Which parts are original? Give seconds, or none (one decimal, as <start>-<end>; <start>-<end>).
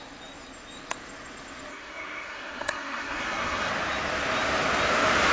0.0-1.7; 3.7-5.3